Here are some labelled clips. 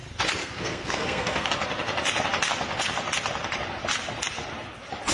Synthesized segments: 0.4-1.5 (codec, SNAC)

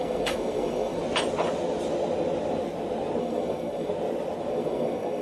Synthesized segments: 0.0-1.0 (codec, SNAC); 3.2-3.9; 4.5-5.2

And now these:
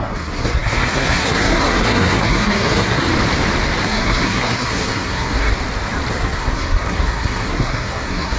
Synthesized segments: 0.0-3.1 (codec, SNAC); 3.8-5.5; 6.1-8.4

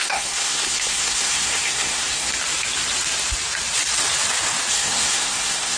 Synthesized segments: 0.0-2.3 (codec, SNAC); 4.7-5.8

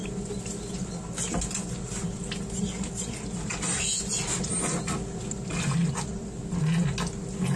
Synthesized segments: none

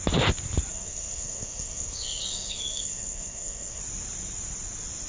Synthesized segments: 0.7-3.8 (codec, SNAC)

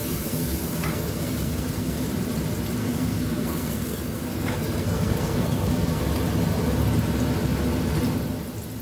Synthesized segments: 0.0-2.1 (codec, SNAC); 2.8-6.0

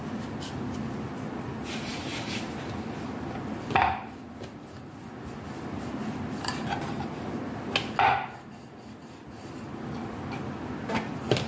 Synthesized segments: none